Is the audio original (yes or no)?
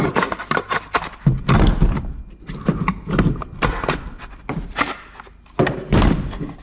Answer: yes